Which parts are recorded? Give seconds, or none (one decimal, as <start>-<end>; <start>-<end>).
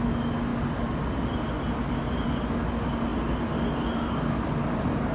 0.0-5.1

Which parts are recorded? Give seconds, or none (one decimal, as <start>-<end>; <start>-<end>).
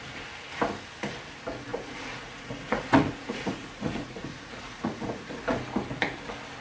0.0-1.7; 5.4-6.6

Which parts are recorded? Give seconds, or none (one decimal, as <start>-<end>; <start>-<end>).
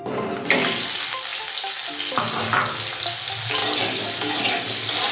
0.0-5.1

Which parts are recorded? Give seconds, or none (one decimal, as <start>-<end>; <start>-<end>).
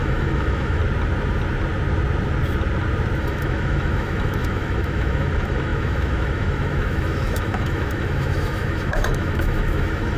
0.8-3.2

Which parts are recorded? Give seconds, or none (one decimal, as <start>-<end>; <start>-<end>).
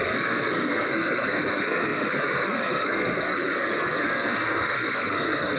none